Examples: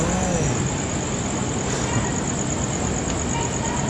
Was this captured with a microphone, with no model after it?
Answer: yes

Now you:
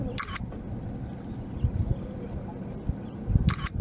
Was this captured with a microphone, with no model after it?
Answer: yes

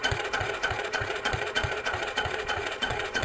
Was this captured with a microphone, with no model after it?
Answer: no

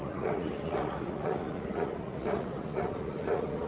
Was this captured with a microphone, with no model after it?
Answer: no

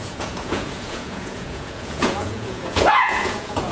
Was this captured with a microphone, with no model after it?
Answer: no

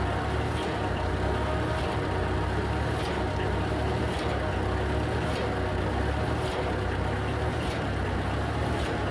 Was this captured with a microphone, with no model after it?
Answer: yes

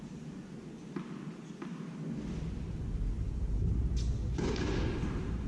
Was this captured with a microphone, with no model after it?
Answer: yes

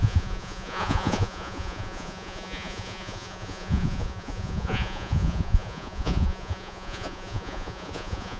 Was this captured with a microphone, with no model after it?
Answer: no